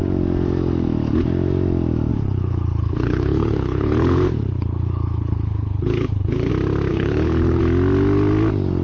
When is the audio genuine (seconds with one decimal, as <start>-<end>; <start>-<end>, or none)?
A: 0.0-2.1; 6.5-6.9; 7.6-8.8